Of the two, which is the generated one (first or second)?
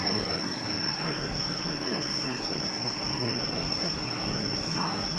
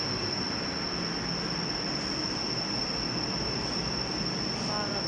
first